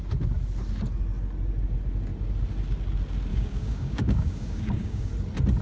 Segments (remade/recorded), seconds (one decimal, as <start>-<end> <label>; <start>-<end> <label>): 0.0-3.3 recorded; 3.3-5.1 remade; 5.1-5.6 recorded